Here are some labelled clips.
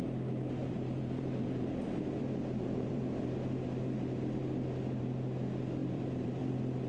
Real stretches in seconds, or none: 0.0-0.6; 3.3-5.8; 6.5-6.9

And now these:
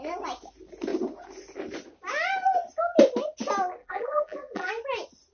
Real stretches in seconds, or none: 0.0-3.8; 4.7-5.3